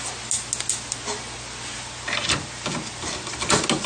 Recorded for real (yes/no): yes